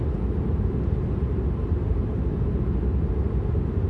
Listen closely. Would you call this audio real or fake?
real